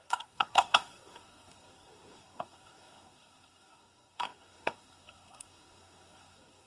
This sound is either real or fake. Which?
fake